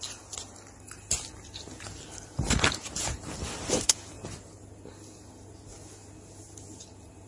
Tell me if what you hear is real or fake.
real